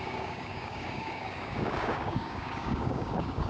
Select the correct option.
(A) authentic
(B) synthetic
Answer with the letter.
B